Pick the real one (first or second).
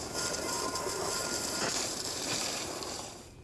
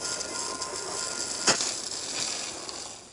second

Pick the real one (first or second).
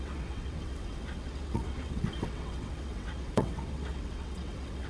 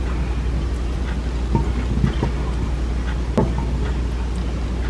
second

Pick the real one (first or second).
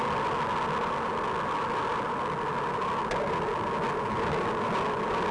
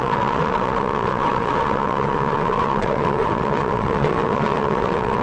first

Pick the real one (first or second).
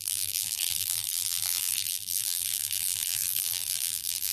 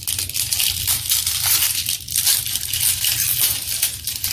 second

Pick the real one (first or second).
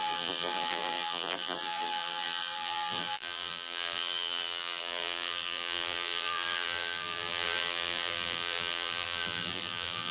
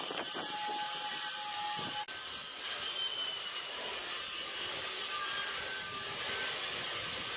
second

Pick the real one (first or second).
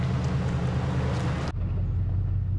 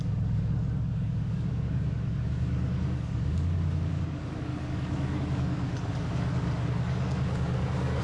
first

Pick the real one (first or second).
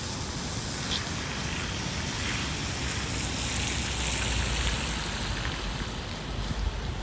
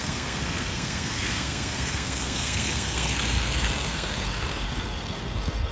first